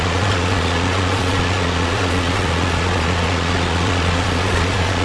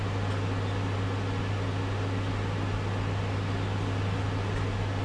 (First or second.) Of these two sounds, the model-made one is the first